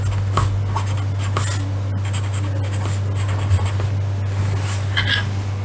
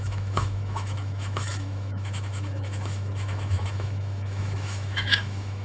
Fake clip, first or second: second